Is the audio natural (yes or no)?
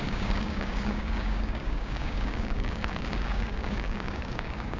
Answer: no